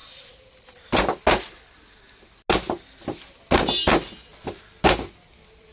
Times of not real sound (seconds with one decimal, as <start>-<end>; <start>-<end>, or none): none